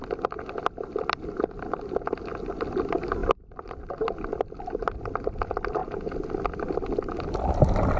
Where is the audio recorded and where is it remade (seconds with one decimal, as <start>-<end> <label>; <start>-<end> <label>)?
0.0-8.0 recorded